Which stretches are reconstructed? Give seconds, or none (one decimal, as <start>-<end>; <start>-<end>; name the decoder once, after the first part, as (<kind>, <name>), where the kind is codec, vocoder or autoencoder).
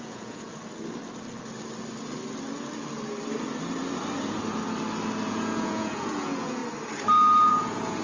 0.0-0.5 (vocoder, Vocos); 5.3-6.6; 7.5-8.0